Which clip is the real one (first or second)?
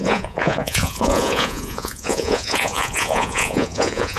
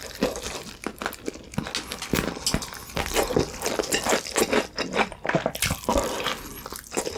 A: second